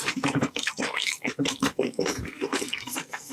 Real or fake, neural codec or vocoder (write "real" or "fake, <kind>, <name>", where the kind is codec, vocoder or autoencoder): fake, codec, SNAC